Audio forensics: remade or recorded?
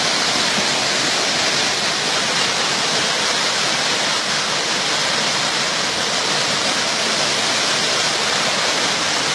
recorded